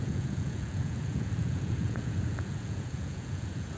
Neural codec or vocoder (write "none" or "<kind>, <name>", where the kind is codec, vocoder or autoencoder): vocoder, Vocos